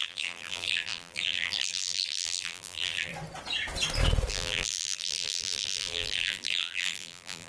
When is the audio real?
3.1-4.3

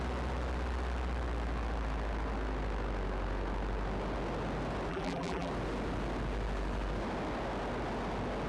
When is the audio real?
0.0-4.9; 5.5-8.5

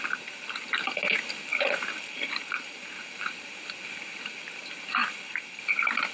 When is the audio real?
0.0-1.5; 3.1-5.0; 5.6-6.1